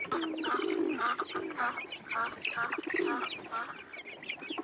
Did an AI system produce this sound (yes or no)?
no